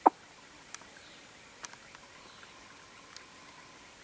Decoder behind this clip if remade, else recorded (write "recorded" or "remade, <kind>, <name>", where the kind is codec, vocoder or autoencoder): recorded